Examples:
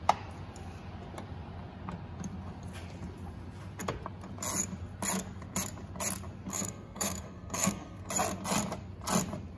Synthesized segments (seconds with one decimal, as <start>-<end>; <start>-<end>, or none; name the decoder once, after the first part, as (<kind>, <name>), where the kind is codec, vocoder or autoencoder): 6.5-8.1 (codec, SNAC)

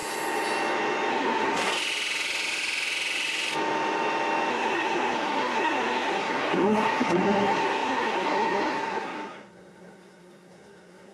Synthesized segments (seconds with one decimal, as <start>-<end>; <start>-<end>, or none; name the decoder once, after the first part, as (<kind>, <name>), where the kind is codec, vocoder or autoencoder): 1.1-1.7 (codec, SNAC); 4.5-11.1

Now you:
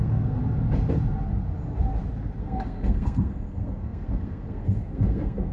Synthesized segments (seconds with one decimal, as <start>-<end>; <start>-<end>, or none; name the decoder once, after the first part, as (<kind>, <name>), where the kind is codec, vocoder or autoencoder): 0.0-0.4 (codec, SNAC); 2.4-5.5

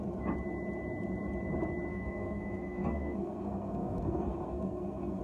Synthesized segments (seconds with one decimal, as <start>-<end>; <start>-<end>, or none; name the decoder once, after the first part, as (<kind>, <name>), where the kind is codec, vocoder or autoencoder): 1.9-5.2 (codec, SNAC)

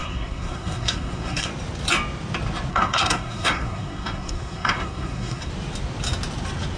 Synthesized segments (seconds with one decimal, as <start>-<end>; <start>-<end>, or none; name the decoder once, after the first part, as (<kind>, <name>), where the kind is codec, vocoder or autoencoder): 0.0-1.5 (codec, SNAC); 2.7-5.5